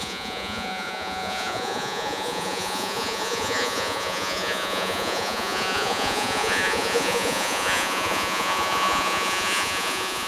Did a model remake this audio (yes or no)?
yes